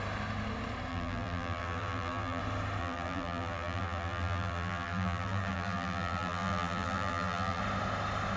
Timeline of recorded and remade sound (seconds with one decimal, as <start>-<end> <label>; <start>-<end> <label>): 0.0-0.9 recorded; 0.9-2.4 remade; 2.4-2.8 recorded; 2.8-7.6 remade; 7.6-8.4 recorded